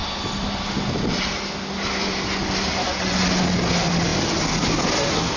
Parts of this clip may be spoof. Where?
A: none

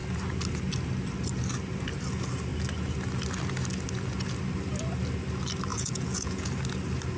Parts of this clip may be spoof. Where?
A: 5.7-6.5 (vocoder, Vocos)

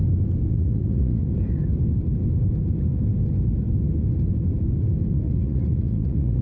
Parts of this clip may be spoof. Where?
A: 0.5-1.3 (vocoder, Vocos); 5.1-6.4

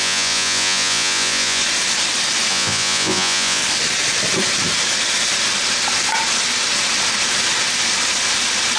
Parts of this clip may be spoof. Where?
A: 0.0-1.6 (vocoder, Vocos); 2.5-3.6

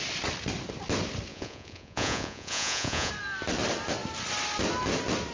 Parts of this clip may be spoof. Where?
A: 1.3-3.1 (vocoder, Vocos)

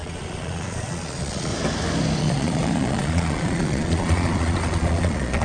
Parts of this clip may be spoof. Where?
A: 0.0-1.5 (vocoder, Vocos); 2.2-5.4

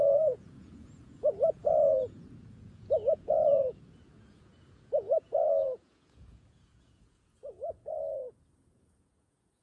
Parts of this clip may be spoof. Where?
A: 0.0-9.6 (vocoder, Vocos)